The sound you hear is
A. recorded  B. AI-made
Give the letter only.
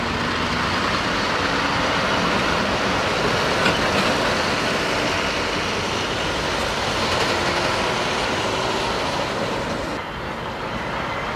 A